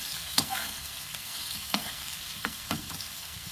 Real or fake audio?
fake